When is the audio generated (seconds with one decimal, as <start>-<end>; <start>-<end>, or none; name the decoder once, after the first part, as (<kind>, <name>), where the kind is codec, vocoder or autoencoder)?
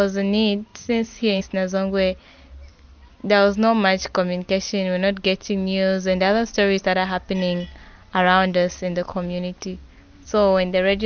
0.7-1.4 (vocoder, Vocos)